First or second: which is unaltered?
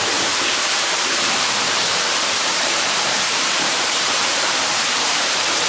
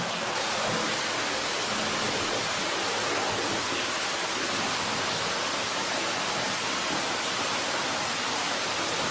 second